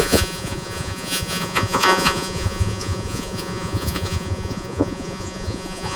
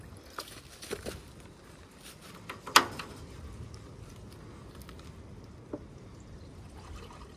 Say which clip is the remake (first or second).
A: first